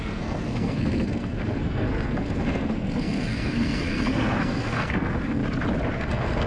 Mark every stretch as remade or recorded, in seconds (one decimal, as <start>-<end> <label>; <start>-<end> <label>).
0.0-5.4 remade; 5.4-5.9 recorded; 5.9-6.5 remade